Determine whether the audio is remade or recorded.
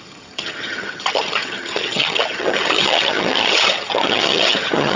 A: remade